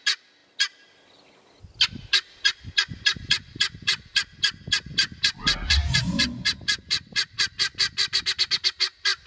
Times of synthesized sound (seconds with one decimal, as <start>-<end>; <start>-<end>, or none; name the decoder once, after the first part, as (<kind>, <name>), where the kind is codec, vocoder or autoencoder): none